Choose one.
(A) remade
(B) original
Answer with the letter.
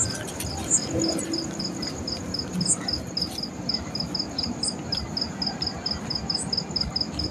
B